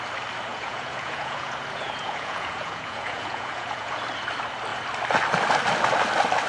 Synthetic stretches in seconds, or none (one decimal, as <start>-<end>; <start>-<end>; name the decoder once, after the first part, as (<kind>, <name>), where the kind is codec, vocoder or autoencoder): 0.5-4.0 (vocoder, Vocos)